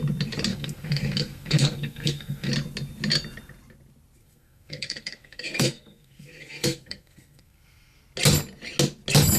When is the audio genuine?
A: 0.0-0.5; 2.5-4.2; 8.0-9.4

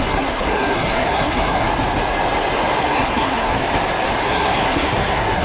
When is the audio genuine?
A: 1.7-2.8; 3.6-4.2

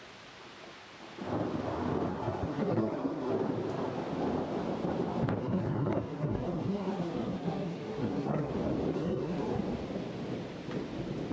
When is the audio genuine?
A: 0.0-2.1; 3.3-5.4; 8.5-8.9; 9.6-11.3

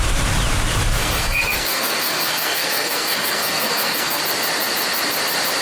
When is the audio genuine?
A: 0.0-1.0; 4.2-5.6

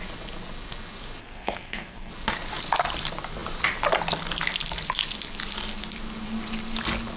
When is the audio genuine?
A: 0.0-1.2; 2.1-7.2